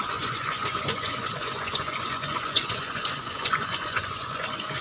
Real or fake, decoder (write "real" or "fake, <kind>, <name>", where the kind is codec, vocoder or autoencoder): fake, vocoder, Vocos